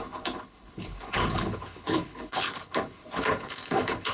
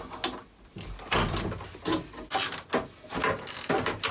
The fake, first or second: first